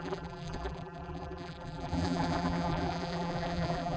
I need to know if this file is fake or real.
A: fake